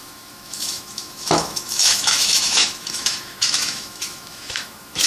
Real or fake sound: fake